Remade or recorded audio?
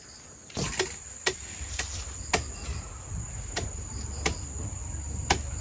recorded